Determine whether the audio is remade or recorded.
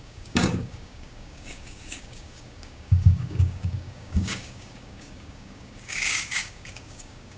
remade